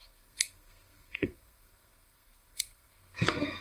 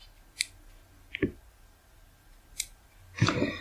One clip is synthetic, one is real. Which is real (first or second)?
second